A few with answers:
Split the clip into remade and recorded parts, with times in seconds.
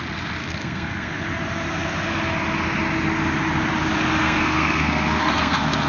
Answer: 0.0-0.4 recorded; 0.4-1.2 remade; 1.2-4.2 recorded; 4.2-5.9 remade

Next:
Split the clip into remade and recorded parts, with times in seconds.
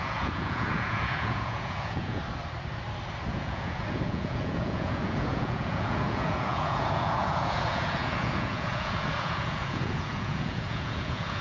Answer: 0.0-2.2 remade; 2.2-3.3 recorded; 3.3-11.4 remade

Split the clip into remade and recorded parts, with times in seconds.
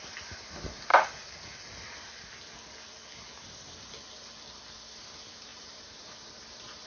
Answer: 0.0-0.9 remade; 0.9-5.0 recorded; 5.0-6.9 remade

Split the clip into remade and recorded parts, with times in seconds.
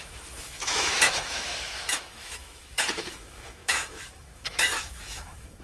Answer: 0.0-5.6 remade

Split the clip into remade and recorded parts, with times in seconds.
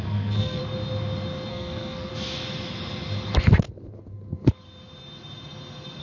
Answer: 0.0-0.6 remade; 0.6-1.5 recorded; 1.5-2.1 remade; 2.1-6.0 recorded